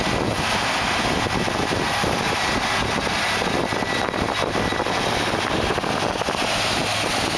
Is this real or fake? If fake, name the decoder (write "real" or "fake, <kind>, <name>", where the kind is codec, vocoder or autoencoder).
real